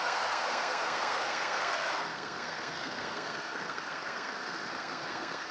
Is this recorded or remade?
remade